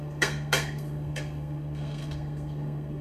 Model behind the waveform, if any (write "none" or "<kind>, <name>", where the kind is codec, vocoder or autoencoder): codec, SNAC